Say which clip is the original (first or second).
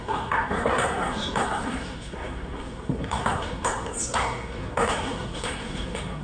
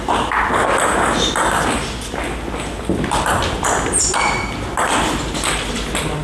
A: second